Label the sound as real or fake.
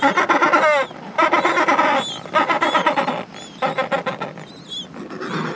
real